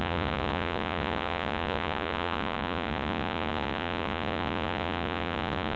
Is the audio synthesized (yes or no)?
yes